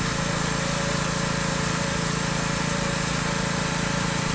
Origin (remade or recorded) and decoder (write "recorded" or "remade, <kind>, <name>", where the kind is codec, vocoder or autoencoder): remade, vocoder, BigVGAN v2